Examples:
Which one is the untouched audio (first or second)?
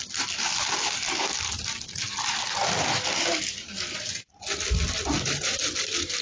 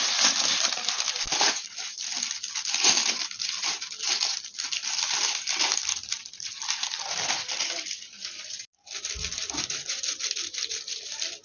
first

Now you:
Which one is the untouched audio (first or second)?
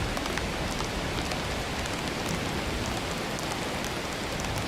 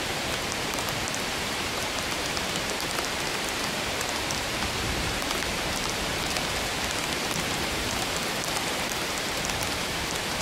first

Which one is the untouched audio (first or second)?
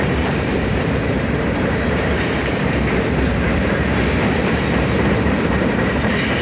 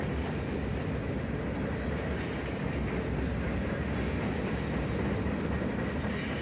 second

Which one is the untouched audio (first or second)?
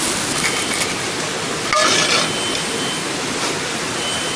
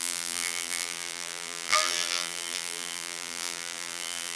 first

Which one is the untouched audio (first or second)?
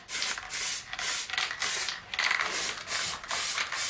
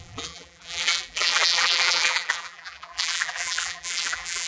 first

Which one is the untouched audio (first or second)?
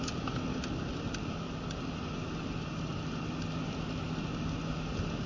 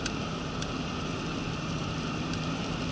first